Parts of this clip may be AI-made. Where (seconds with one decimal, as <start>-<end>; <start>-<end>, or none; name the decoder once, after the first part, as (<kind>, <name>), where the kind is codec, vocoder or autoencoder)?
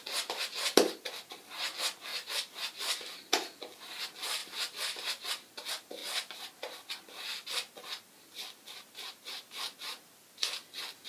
4.4-5.3 (vocoder, BigVGAN v2); 6.0-10.3